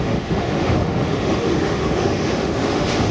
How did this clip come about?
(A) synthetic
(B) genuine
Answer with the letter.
A